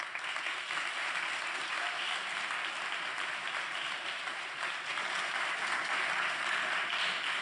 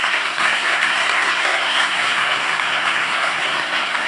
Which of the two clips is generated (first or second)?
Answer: second